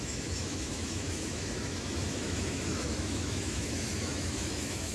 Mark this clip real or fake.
fake